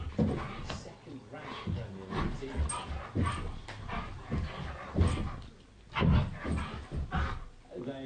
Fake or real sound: real